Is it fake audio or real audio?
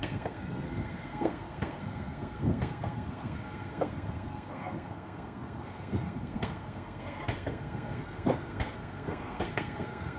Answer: fake